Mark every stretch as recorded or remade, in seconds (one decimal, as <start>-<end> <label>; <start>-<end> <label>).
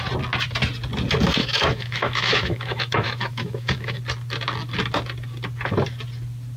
0.0-1.4 recorded; 1.4-4.0 remade; 4.0-6.6 recorded